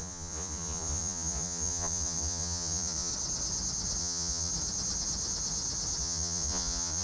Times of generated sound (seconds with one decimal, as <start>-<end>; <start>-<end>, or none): 0.0-3.1; 4.0-4.5; 6.0-7.0